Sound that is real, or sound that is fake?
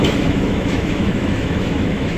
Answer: fake